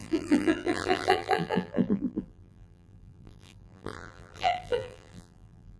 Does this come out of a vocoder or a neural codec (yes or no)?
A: yes